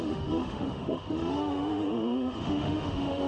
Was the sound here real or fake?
fake